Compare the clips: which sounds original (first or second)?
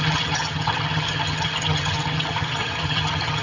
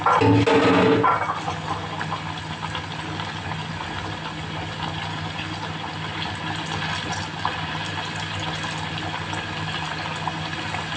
second